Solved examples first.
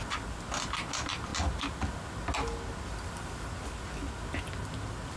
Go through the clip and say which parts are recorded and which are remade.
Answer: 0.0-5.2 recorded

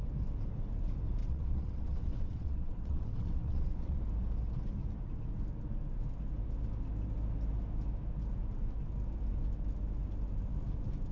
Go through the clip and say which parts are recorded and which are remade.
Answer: 0.0-1.2 recorded; 1.2-4.0 remade; 4.0-11.1 recorded

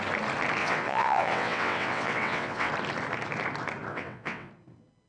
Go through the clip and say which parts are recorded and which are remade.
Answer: 0.0-0.6 recorded; 0.6-2.7 remade; 2.7-3.9 recorded; 3.9-4.5 remade; 4.5-5.1 recorded

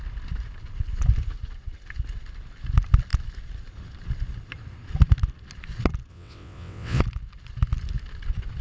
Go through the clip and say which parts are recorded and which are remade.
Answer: 0.0-6.1 recorded; 6.1-7.0 remade; 7.0-8.6 recorded

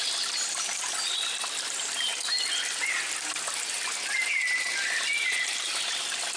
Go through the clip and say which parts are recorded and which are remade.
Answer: 0.0-6.4 recorded

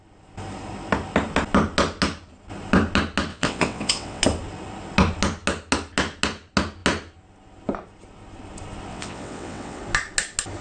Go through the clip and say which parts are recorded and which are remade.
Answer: 0.0-3.3 recorded; 3.3-4.2 remade; 4.2-8.9 recorded; 8.9-9.8 remade; 9.8-10.6 recorded

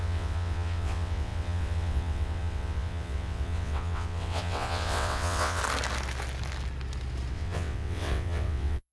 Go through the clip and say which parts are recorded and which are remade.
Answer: 0.0-5.6 remade; 5.6-7.3 recorded; 7.3-8.9 remade